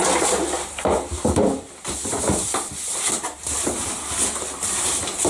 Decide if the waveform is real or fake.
fake